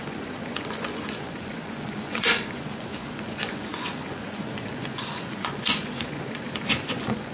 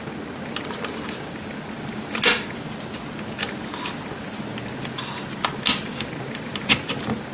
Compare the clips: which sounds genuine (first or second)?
second